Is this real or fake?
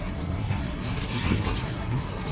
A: fake